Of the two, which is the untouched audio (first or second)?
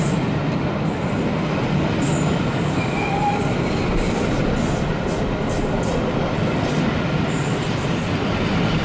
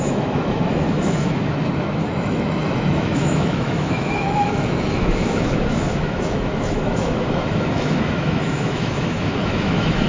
first